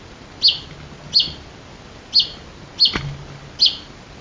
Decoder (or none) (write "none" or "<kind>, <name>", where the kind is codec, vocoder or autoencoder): none